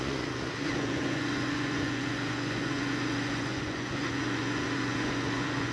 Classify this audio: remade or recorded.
remade